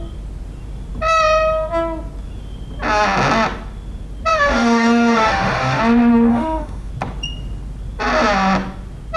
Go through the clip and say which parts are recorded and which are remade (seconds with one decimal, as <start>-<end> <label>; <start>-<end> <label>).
0.0-4.3 recorded; 4.3-5.8 remade; 5.8-6.3 recorded; 6.3-6.9 remade; 6.9-9.2 recorded